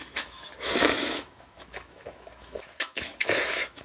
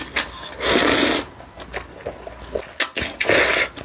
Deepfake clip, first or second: first